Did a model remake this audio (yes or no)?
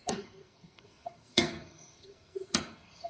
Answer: yes